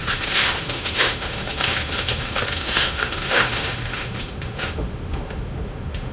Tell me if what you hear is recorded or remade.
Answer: remade